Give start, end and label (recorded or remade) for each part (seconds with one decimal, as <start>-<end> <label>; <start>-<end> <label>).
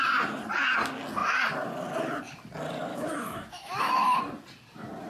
0.0-2.9 recorded; 2.9-4.2 remade; 4.2-5.1 recorded